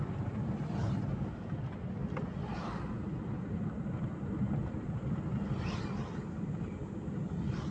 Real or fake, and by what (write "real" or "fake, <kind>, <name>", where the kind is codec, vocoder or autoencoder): real